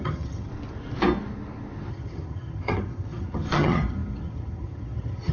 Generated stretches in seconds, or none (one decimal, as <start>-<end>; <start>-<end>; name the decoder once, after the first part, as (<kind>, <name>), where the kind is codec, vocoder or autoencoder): 0.0-0.5 (vocoder, HiFi-GAN); 1.9-5.3